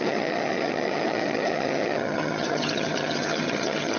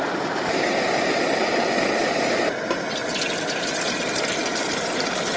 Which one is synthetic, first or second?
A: first